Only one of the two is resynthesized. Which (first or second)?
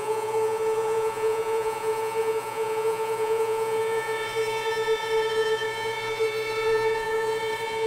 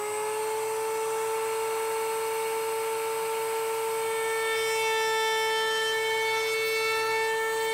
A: first